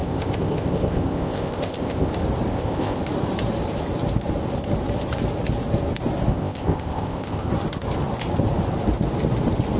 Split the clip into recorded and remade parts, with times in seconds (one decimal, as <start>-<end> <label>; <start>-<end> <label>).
0.0-2.1 remade; 2.1-2.5 recorded; 2.5-3.0 remade; 3.0-6.3 recorded; 6.3-7.5 remade; 7.5-9.8 recorded